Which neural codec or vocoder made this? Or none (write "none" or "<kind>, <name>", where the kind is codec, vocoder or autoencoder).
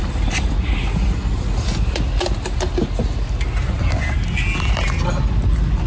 none